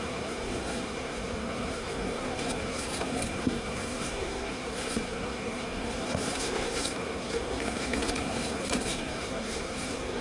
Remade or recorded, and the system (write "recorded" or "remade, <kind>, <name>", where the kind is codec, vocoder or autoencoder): remade, codec, SNAC